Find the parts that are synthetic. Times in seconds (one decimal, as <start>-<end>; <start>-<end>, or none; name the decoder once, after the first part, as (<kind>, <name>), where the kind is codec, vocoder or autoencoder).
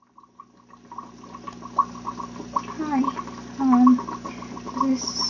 none